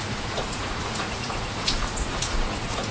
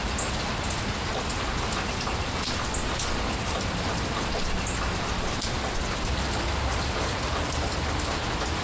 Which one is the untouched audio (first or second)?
second